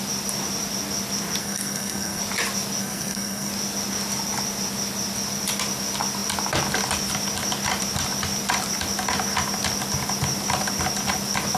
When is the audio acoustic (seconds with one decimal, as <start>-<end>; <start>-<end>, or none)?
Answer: 0.0-1.4; 2.2-2.8; 3.5-11.6